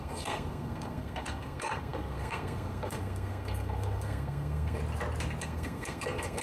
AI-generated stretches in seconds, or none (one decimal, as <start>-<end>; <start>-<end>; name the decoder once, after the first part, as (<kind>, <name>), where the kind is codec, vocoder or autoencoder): 0.0-4.8 (codec, SNAC); 5.4-6.4